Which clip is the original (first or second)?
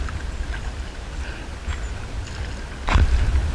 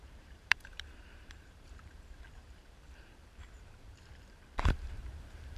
first